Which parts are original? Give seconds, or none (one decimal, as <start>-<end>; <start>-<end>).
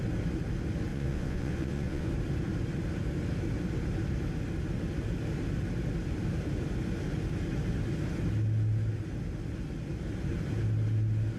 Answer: 0.0-0.9; 2.1-11.4